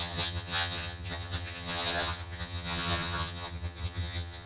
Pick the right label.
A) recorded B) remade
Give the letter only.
B